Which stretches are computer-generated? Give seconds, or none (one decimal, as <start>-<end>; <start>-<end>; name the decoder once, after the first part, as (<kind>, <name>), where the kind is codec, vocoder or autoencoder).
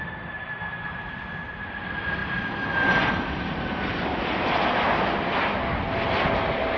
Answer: 3.9-4.9 (vocoder, BigVGAN v2)